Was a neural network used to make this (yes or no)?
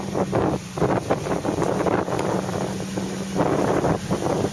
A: no